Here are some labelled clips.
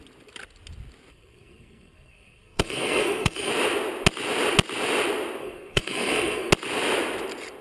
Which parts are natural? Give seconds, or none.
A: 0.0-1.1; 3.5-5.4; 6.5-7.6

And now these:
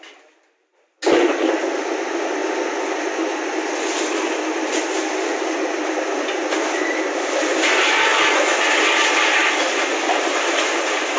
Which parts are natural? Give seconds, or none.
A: 0.0-11.2

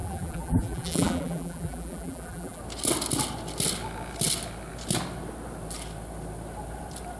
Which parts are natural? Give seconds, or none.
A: 2.6-7.2

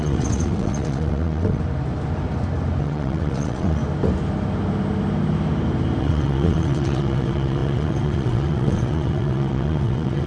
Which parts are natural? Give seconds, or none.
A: 1.6-2.8; 3.8-6.0

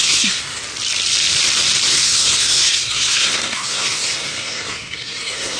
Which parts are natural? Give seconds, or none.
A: 0.6-1.9